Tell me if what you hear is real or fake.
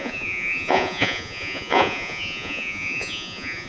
fake